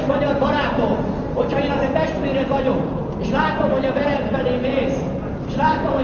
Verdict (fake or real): real